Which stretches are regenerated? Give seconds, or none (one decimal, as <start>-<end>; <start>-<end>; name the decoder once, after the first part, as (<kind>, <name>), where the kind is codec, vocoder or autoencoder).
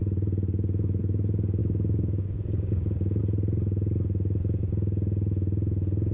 1.6-3.2 (codec, DAC)